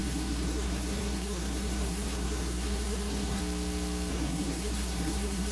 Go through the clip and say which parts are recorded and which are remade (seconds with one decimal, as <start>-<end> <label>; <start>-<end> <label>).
0.0-3.4 remade; 3.4-4.1 recorded; 4.1-5.5 remade